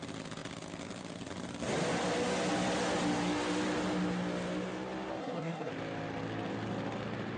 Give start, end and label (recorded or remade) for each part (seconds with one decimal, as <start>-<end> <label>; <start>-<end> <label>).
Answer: 0.0-5.2 recorded; 5.2-5.7 remade; 5.7-7.4 recorded